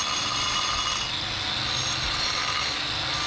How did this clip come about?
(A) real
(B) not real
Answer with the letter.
A